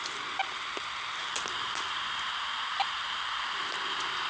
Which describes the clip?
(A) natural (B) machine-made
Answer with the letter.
A